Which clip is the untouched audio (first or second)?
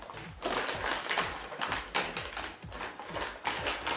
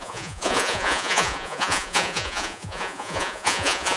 first